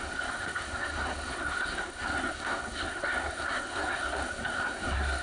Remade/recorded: remade